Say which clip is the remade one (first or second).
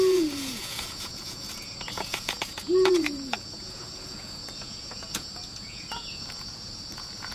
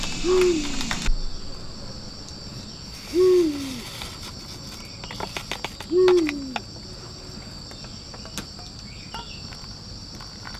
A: first